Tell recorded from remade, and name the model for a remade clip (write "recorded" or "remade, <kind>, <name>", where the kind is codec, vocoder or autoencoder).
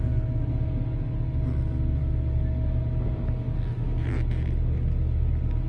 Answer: recorded